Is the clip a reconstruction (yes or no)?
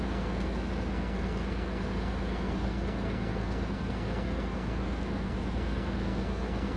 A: yes